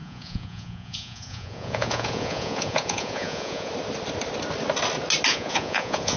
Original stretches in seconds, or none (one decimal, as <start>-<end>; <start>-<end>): 3.7-5.3